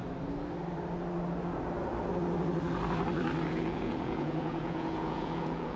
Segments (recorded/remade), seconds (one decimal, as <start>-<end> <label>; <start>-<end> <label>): 0.0-3.5 recorded; 3.5-5.8 remade